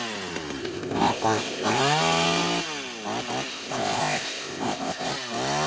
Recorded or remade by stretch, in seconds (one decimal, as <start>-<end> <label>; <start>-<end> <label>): 0.0-0.6 recorded; 0.6-1.8 remade; 1.8-3.5 recorded; 3.5-5.1 remade; 5.1-5.7 recorded